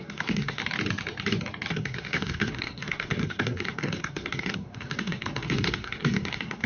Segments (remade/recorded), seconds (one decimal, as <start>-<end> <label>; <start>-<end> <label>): 0.0-0.6 remade; 0.6-1.7 recorded; 1.7-6.7 remade